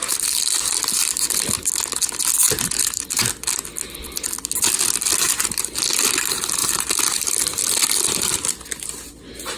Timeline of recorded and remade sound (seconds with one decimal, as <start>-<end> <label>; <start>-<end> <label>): 0.0-9.6 recorded